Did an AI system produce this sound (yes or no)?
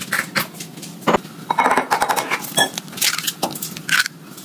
no